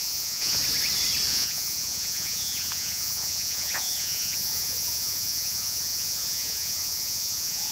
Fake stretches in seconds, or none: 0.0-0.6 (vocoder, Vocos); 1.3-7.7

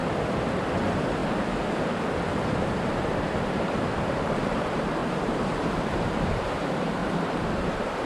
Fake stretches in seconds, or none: 0.6-1.2 (vocoder, BigVGAN v2); 2.4-8.1